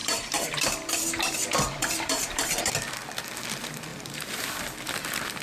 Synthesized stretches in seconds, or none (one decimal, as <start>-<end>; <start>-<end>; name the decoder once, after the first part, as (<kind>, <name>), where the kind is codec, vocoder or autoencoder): 0.0-2.6 (vocoder, BigVGAN v2); 3.9-4.5